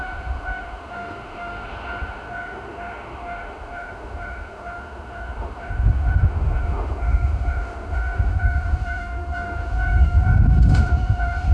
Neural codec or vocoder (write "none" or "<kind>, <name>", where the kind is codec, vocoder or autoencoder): autoencoder, DAC-VAE